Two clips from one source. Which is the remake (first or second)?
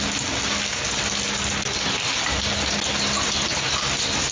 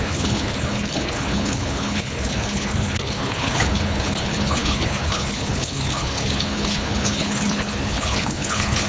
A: second